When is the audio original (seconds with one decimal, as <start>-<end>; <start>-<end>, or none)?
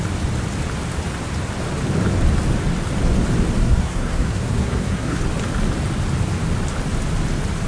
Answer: 0.0-3.6; 5.2-7.7